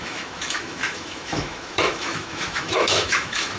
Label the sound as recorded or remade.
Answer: remade